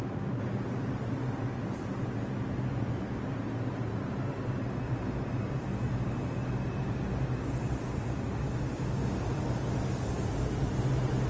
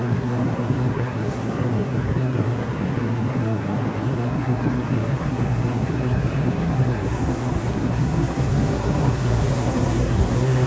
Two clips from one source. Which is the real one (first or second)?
first